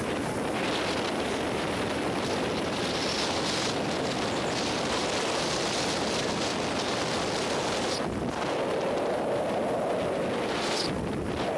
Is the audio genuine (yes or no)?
yes